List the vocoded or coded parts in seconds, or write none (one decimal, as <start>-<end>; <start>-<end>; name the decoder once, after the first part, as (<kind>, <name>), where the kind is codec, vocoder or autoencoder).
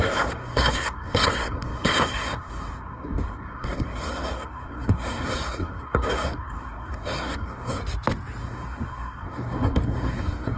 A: 0.0-7.8 (codec, SNAC); 8.4-10.6